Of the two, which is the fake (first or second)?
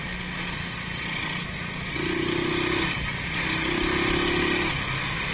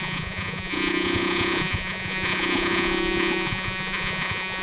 second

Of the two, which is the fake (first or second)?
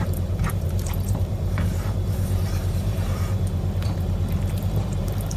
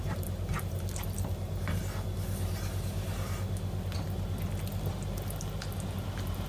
first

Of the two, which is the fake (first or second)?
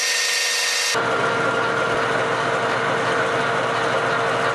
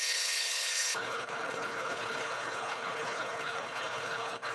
second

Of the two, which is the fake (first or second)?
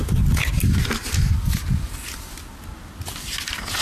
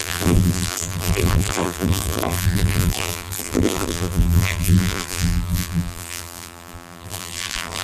second